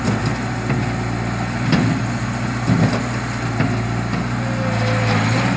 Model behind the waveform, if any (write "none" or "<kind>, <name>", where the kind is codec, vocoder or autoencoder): none